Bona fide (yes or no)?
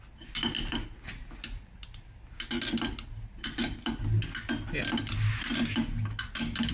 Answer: yes